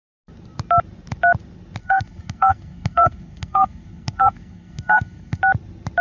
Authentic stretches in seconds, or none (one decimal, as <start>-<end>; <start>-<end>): 0.0-1.8; 5.4-6.0

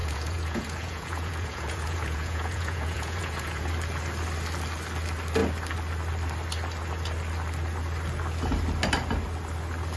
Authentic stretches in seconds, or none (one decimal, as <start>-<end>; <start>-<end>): 3.7-10.0